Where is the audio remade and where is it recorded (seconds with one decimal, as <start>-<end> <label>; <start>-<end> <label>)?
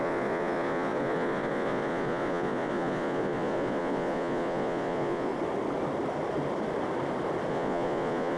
0.0-5.3 remade; 5.3-7.5 recorded; 7.5-8.4 remade